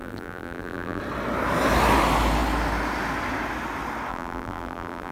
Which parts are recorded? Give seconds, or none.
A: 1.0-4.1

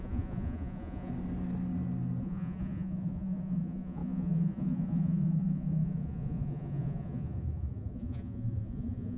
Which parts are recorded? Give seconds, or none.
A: 1.1-2.2

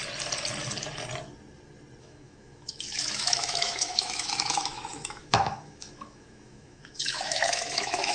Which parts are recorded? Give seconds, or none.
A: 0.0-2.0

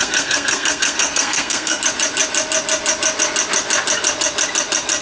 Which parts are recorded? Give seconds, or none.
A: 1.8-5.0

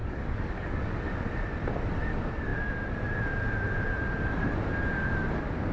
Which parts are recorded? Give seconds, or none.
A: 0.9-5.7

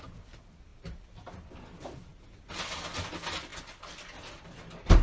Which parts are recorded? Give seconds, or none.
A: 0.7-1.6; 2.1-2.9; 3.5-4.4

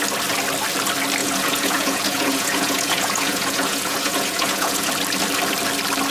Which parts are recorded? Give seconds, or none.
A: 0.0-1.2; 4.9-6.1